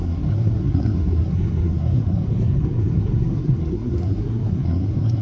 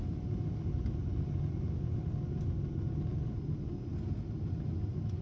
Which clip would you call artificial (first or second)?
first